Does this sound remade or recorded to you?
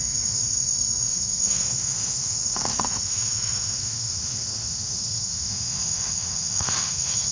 remade